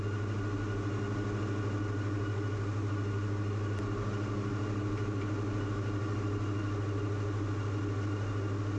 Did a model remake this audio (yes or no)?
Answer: no